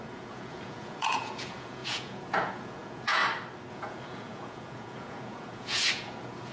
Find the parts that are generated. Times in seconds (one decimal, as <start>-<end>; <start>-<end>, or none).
0.0-3.2; 3.7-6.5